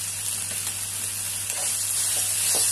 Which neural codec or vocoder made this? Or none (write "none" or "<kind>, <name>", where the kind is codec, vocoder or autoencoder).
none